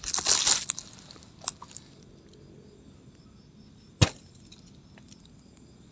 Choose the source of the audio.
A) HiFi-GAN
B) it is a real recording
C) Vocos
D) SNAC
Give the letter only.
B